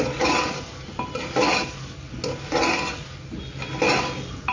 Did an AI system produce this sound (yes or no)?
no